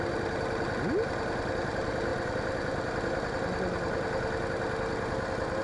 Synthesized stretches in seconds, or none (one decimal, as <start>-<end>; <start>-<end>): none